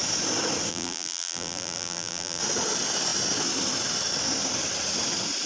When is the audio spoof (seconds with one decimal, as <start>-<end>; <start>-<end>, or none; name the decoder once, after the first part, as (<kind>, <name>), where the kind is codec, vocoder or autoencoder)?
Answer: 0.7-2.4 (vocoder, BigVGAN v2)

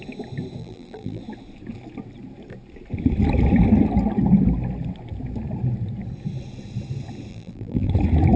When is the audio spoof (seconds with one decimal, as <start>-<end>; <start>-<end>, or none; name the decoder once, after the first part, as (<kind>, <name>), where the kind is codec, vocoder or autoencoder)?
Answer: 0.6-1.2 (vocoder, BigVGAN v2); 7.3-7.9

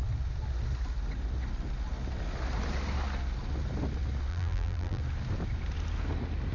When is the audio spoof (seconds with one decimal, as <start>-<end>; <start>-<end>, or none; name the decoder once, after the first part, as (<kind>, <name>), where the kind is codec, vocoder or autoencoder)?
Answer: 4.3-5.0 (vocoder, BigVGAN v2)

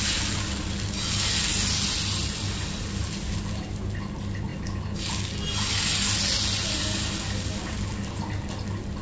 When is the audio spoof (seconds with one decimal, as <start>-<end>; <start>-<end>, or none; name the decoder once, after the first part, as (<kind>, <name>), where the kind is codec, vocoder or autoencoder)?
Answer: none